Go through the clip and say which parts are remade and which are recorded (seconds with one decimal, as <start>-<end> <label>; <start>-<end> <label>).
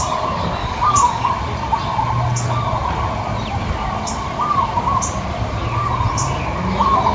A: 0.0-0.6 recorded; 0.6-1.3 remade; 1.3-7.1 recorded